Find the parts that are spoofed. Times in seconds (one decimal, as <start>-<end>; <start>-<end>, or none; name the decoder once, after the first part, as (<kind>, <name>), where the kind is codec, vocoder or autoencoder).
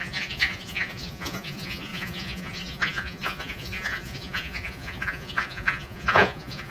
0.0-6.7 (vocoder, Vocos)